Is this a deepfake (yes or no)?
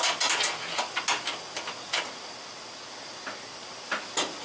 no